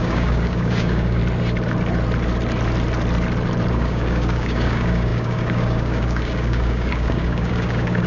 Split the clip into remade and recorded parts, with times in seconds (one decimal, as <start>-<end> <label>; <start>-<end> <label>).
0.0-1.2 remade; 1.2-3.7 recorded; 3.7-8.1 remade